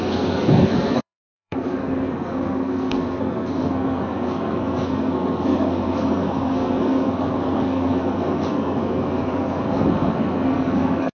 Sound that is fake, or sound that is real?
fake